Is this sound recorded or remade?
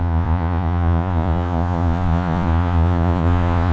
remade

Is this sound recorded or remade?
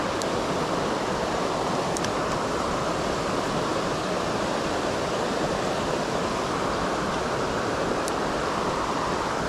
recorded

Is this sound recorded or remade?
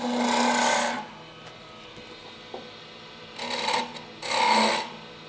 recorded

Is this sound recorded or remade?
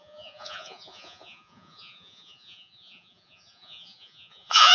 remade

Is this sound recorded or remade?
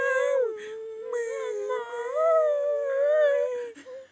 recorded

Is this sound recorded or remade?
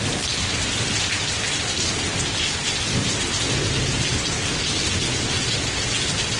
recorded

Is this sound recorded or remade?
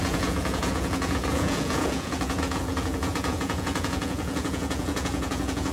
remade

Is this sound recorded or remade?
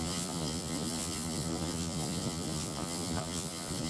remade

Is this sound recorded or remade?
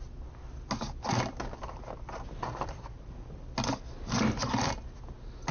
recorded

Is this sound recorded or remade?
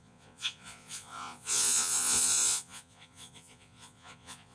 remade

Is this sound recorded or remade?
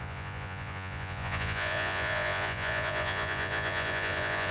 remade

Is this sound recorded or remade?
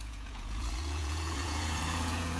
remade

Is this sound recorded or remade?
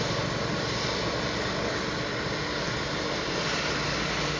recorded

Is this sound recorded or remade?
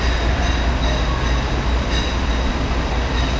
recorded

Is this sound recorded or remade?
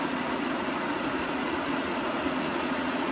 remade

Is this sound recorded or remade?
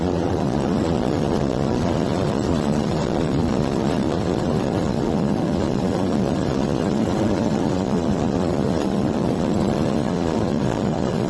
remade